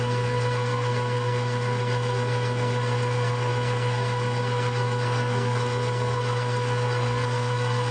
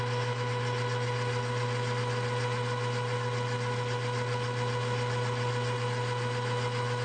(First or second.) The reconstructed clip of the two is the first